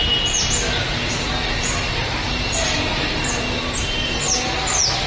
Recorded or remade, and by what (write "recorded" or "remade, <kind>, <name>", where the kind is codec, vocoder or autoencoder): recorded